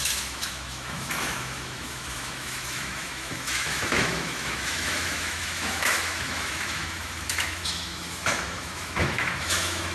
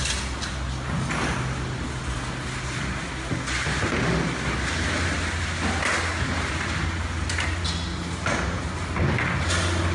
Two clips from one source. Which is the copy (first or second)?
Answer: first